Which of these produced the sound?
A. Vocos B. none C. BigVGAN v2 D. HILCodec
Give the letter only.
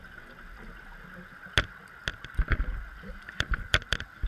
B